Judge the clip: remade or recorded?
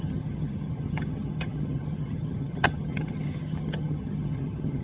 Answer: remade